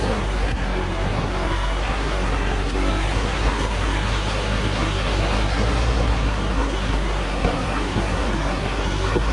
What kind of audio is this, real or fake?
fake